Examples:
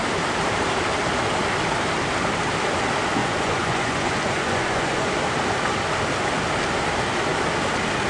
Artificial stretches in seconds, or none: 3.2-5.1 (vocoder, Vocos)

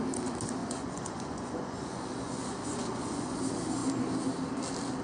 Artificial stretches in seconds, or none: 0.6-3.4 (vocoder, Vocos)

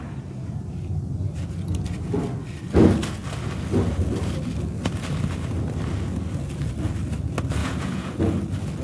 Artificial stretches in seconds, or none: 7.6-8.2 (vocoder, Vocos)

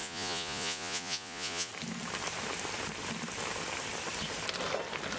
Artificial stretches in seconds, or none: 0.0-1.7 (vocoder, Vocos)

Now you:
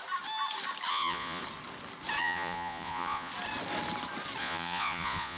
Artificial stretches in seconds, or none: 0.9-1.4 (vocoder, Vocos); 2.2-3.3; 4.4-5.4

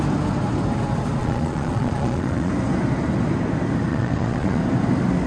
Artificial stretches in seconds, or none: 1.2-2.5 (vocoder, Vocos); 3.9-4.6